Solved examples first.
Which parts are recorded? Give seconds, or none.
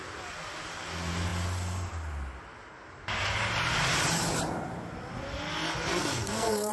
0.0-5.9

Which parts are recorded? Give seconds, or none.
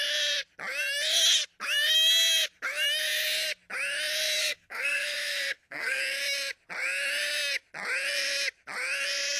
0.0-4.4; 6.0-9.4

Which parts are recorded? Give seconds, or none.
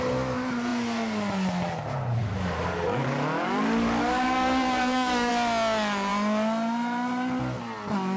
0.0-2.2; 5.3-8.2